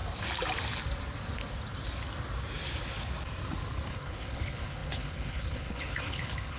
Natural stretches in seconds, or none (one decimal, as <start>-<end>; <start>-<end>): 0.0-3.9